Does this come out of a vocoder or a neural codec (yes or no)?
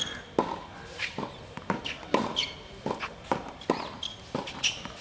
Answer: no